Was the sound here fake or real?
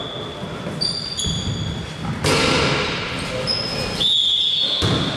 real